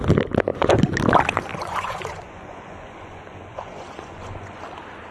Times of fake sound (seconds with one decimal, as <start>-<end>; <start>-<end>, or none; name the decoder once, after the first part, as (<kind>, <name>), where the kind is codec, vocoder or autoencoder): 1.5-4.6 (vocoder, Vocos)